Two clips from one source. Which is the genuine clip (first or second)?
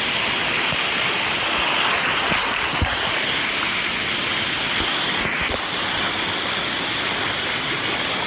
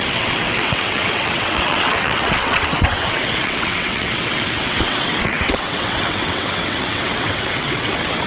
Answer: first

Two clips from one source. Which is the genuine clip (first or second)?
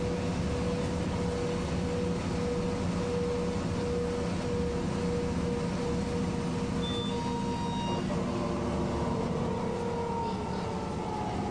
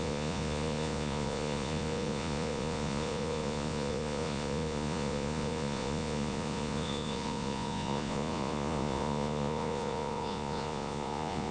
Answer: first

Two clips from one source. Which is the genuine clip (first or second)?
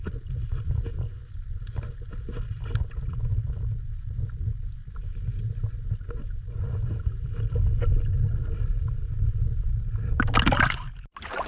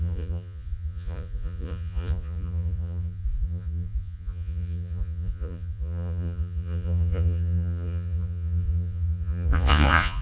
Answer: first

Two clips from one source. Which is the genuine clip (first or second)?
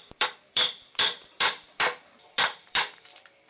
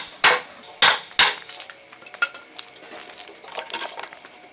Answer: second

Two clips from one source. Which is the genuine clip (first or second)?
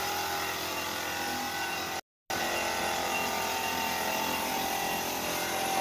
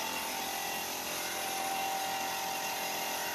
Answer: first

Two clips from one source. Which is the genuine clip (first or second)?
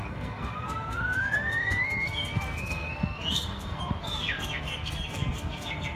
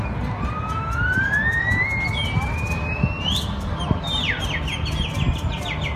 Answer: second